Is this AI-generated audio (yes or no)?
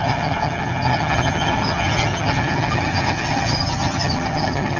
yes